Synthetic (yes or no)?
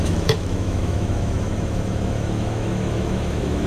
yes